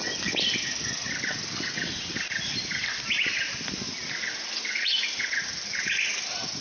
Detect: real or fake real